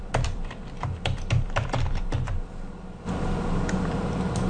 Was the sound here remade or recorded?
remade